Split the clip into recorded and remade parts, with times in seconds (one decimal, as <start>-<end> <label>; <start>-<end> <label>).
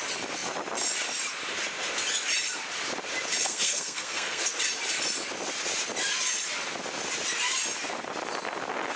0.0-3.4 recorded; 3.4-4.4 remade; 4.4-9.0 recorded